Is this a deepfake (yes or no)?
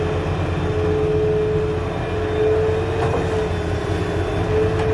no